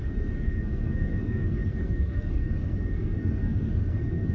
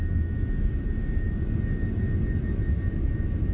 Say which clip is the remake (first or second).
first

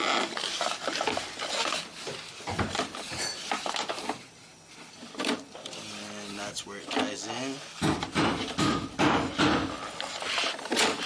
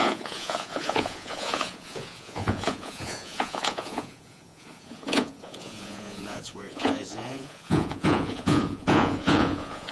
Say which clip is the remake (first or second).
second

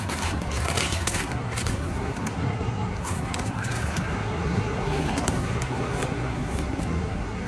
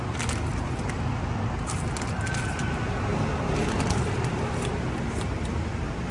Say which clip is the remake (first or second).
first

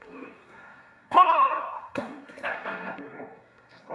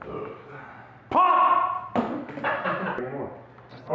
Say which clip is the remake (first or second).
first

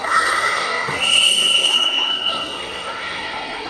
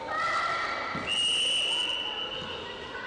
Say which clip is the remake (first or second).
first